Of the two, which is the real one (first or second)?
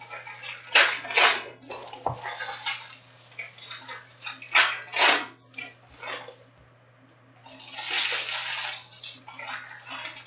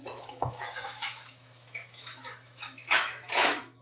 first